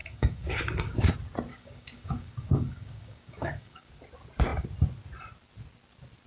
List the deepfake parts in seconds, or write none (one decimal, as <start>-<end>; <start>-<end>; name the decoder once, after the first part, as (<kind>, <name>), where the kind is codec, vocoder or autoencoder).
0.0-1.1 (codec, DAC); 1.5-3.9